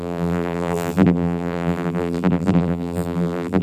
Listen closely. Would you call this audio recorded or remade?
remade